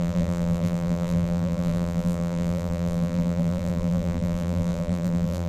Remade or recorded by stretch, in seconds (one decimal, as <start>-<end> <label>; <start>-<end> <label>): 0.0-5.5 remade